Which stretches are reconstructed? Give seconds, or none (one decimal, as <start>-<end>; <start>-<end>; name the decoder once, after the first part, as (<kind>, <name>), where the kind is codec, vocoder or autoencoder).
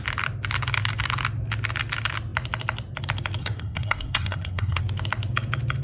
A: 3.4-4.8 (codec, SNAC)